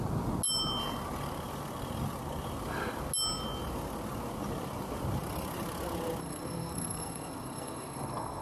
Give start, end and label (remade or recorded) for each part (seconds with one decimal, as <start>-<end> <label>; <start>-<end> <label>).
0.0-6.2 recorded; 6.2-8.4 remade